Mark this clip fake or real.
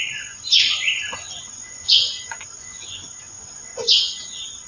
fake